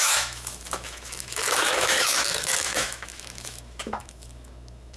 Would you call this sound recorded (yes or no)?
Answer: no